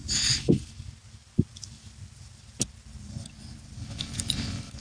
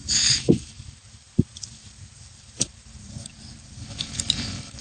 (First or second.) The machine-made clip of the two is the second